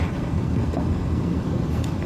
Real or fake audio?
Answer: fake